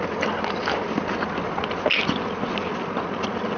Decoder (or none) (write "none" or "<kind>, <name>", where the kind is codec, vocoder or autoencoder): none